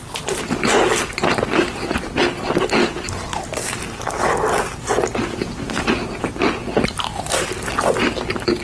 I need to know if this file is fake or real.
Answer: real